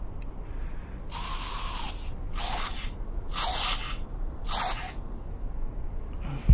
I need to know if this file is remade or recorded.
recorded